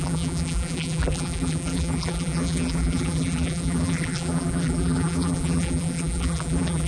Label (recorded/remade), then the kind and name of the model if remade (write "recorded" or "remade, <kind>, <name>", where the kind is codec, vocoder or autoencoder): remade, vocoder, BigVGAN v2